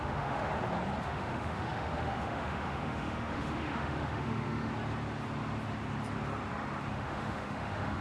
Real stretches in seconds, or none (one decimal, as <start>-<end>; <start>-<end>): 0.5-1.0; 4.7-6.9